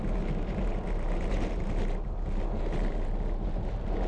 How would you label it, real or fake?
real